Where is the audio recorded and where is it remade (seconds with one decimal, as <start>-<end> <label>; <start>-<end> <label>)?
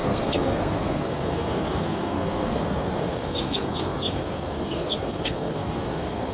0.0-6.3 remade